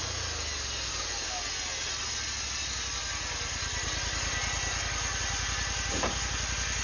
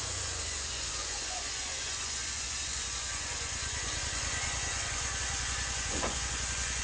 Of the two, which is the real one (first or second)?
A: first